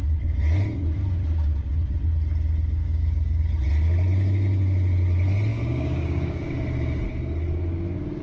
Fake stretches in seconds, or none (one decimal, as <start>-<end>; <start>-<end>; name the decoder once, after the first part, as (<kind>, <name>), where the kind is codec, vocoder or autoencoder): 2.8-3.4 (codec, DAC); 5.5-6.5